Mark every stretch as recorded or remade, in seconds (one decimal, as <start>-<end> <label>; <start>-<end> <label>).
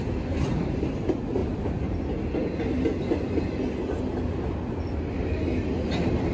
0.0-6.3 recorded